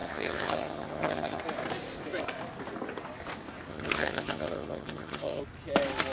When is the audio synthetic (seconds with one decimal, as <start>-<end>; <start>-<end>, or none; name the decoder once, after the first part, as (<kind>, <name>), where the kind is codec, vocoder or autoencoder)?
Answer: 0.0-1.4 (vocoder, HiFi-GAN); 3.7-5.4

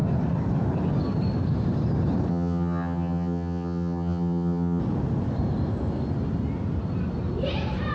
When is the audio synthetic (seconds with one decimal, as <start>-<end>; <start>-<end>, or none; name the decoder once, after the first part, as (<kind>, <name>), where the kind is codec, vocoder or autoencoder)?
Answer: 2.3-4.8 (vocoder, HiFi-GAN)

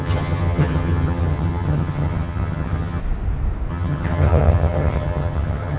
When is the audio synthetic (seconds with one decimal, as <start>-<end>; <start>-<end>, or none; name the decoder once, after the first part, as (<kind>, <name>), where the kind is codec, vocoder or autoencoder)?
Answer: 0.0-3.0 (vocoder, HiFi-GAN); 3.7-5.8

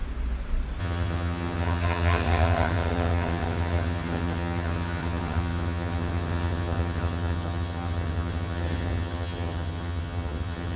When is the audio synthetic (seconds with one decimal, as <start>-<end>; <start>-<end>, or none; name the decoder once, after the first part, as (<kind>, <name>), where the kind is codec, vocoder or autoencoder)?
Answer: 0.8-10.8 (vocoder, HiFi-GAN)

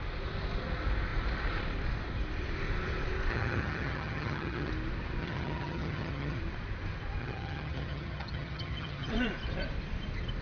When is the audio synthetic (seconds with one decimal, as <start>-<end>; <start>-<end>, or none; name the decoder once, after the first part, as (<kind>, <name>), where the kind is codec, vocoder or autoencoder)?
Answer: 3.3-4.7 (vocoder, HiFi-GAN); 5.2-6.4; 7.2-9.1

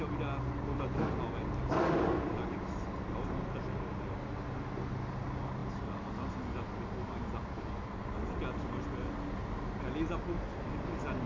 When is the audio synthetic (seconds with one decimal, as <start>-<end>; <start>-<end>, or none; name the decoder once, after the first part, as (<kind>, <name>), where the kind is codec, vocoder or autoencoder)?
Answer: none

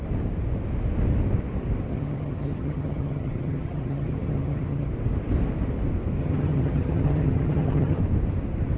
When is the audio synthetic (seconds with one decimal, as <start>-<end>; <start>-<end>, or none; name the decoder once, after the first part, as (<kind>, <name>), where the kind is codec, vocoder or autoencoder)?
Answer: 1.9-4.9 (vocoder, HiFi-GAN); 6.2-8.0